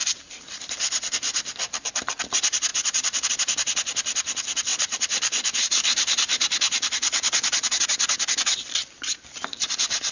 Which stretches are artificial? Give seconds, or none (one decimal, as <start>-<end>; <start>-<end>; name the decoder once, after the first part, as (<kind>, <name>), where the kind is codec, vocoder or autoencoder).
0.0-0.6 (vocoder, BigVGAN v2); 2.7-3.3; 4.7-7.8